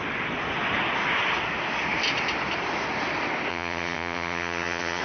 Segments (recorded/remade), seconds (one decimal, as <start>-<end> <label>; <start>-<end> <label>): 0.0-3.5 recorded; 3.5-5.0 remade